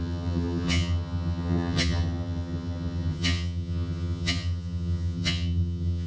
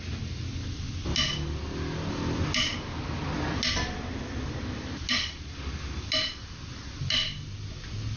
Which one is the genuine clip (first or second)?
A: second